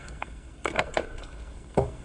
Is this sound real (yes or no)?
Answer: no